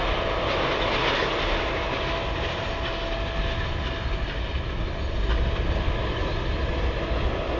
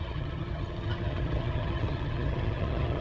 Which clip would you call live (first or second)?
first